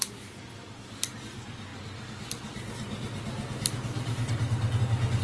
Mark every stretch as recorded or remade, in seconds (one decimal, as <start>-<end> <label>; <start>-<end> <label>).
0.0-5.2 recorded